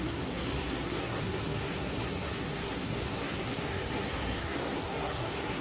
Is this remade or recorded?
remade